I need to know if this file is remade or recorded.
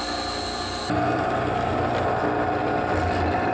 recorded